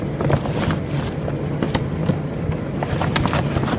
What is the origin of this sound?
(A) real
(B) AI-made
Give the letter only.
A